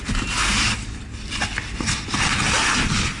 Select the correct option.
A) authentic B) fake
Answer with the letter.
A